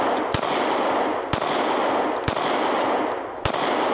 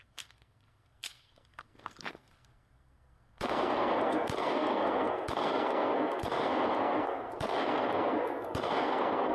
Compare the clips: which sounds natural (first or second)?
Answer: first